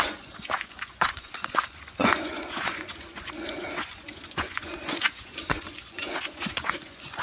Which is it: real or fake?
fake